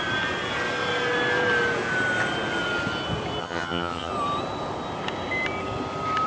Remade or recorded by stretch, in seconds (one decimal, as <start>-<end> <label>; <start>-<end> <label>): 0.0-3.4 recorded; 3.4-4.1 remade; 4.1-6.3 recorded